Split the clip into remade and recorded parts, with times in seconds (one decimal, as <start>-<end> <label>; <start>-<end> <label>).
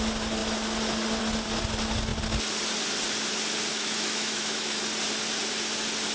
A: 0.0-3.7 recorded; 3.7-4.8 remade; 4.8-6.1 recorded